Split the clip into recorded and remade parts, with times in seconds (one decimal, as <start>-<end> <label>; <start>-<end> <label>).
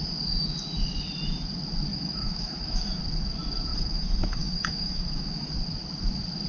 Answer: 0.0-1.9 recorded; 1.9-3.0 remade; 3.0-3.7 recorded; 3.7-5.5 remade; 5.5-6.5 recorded